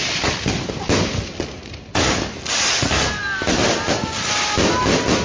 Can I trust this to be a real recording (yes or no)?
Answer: yes